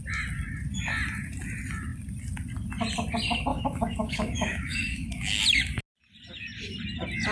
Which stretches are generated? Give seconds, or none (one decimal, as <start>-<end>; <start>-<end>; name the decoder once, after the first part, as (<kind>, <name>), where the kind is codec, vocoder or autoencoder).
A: 3.5-5.4 (autoencoder, DAC-VAE)